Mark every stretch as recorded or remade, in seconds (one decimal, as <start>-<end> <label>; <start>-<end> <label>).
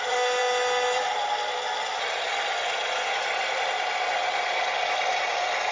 0.0-5.7 recorded